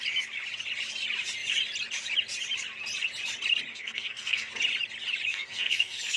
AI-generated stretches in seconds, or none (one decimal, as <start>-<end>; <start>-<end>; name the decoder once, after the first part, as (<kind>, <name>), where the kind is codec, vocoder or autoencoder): 3.7-4.5 (codec, SNAC); 5.3-6.2